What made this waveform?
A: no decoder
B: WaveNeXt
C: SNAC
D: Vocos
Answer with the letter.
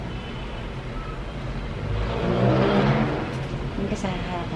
A